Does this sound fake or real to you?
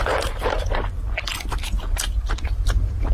fake